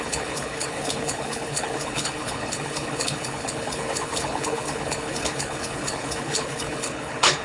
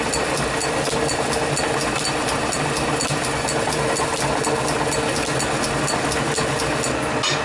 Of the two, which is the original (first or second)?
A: second